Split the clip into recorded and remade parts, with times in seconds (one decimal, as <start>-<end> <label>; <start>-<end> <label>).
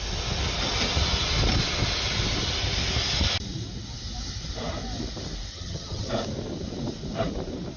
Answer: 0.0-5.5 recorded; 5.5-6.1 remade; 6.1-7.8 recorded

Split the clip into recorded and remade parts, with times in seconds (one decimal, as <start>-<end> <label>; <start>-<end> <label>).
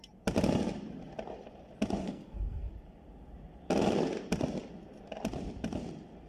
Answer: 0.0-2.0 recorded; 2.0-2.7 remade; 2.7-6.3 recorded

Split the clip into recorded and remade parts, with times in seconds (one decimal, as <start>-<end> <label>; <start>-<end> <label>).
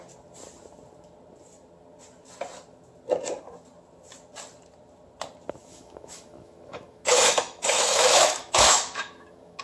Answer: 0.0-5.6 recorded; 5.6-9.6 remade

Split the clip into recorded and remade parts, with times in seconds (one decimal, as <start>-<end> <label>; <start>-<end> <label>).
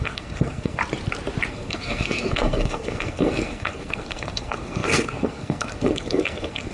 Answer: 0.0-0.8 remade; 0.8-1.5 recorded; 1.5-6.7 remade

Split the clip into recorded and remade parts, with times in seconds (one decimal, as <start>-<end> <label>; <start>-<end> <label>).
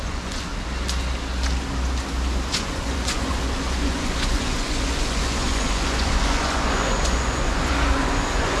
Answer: 0.0-0.5 remade; 0.5-2.5 recorded; 2.5-8.6 remade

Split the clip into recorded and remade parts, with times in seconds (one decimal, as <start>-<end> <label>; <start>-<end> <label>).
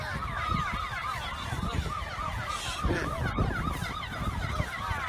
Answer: 0.0-5.1 recorded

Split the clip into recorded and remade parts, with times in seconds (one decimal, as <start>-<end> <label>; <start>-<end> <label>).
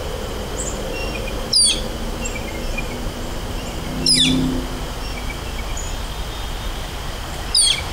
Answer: 0.0-7.9 recorded